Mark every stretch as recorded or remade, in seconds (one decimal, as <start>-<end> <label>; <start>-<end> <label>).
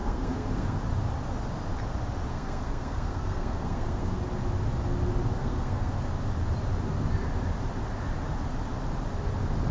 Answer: 0.0-0.8 remade; 0.8-2.3 recorded; 2.3-4.2 remade; 4.2-5.4 recorded; 5.4-5.9 remade; 5.9-9.7 recorded